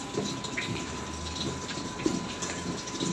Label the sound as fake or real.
real